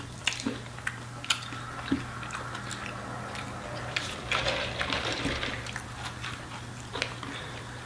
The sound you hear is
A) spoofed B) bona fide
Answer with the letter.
B